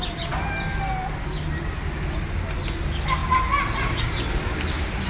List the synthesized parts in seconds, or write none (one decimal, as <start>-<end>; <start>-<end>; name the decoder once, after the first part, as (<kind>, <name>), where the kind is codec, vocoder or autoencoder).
none

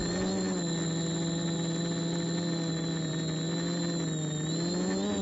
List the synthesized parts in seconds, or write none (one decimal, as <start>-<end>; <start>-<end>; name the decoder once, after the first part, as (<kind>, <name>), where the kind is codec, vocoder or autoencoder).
none

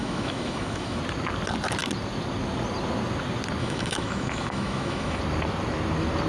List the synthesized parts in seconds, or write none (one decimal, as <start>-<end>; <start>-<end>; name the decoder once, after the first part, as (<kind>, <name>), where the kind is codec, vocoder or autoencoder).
0.0-1.0 (autoencoder, DAC-VAE); 3.6-5.2

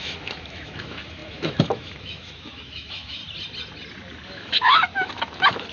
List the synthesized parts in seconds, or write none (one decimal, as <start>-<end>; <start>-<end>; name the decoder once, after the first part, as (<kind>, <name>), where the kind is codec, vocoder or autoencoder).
0.0-3.2 (autoencoder, DAC-VAE); 4.3-5.7

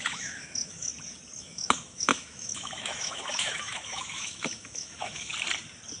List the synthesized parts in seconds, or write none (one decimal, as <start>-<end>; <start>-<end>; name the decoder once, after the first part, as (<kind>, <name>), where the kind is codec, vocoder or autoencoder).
0.0-0.9 (autoencoder, DAC-VAE); 1.4-5.3

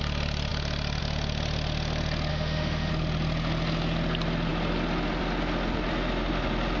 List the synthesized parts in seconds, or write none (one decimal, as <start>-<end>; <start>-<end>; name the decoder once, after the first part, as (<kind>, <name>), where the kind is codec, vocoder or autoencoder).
2.3-2.9 (autoencoder, DAC-VAE)